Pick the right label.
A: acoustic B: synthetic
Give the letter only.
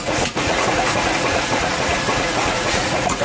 B